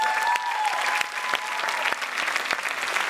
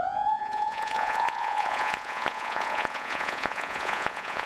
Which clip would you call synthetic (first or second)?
second